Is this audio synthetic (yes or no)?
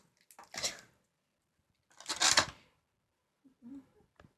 no